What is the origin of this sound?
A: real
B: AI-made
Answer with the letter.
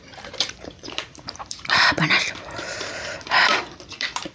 B